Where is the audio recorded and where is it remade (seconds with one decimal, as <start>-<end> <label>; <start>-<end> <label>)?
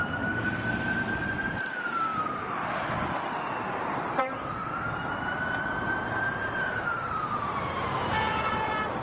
0.0-4.6 remade; 4.6-5.2 recorded; 5.2-9.0 remade